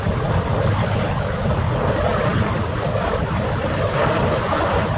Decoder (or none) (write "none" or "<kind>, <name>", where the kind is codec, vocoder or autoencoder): none